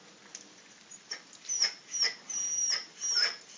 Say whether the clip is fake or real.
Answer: real